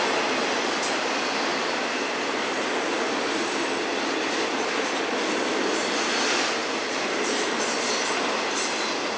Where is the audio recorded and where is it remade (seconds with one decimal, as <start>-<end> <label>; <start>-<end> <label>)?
0.0-6.6 recorded; 6.6-7.6 remade; 7.6-9.2 recorded